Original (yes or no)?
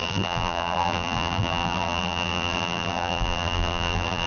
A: no